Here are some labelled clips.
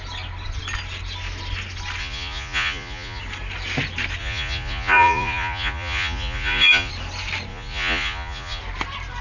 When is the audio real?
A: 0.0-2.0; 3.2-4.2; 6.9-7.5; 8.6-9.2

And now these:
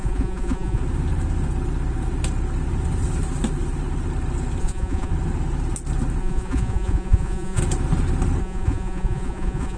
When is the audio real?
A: 0.8-4.6; 5.1-6.2; 7.6-8.4

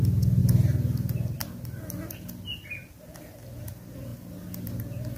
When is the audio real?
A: 0.0-5.2

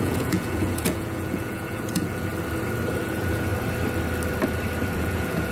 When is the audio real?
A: 2.3-3.0; 3.5-5.0

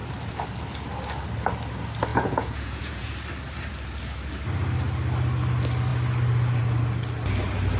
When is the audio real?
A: 0.0-2.1; 3.1-7.8

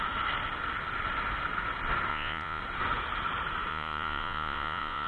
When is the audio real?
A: 0.0-2.1; 2.6-3.7